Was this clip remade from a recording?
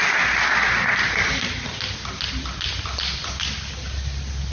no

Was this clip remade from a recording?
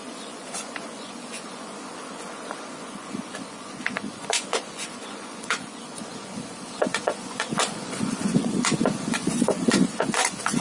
yes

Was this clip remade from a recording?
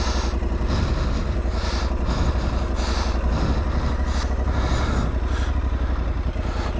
no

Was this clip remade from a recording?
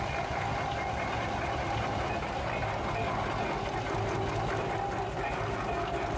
no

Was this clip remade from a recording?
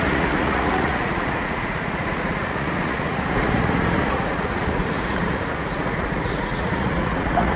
yes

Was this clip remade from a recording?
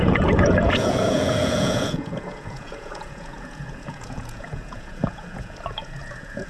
yes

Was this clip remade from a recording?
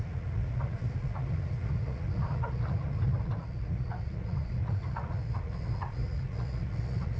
yes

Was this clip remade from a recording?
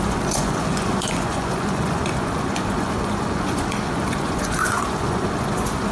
yes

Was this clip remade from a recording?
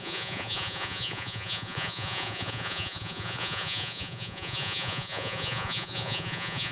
yes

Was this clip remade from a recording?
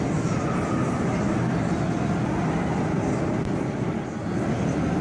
no